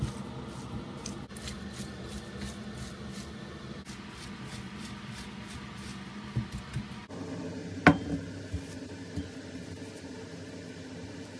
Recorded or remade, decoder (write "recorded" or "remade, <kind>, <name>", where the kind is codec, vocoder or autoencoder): recorded